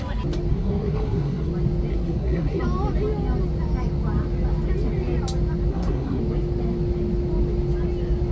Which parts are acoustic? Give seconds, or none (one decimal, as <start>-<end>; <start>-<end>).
0.0-0.5; 1.5-1.9; 2.6-5.7; 6.2-8.3